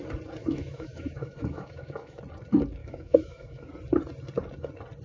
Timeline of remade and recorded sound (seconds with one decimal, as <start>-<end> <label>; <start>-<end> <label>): 0.0-0.4 recorded; 0.4-2.2 remade; 2.2-2.8 recorded; 2.8-3.7 remade; 3.7-5.0 recorded